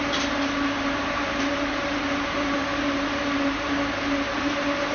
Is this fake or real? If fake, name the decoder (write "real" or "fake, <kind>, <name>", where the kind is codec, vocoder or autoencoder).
fake, vocoder, BigVGAN v2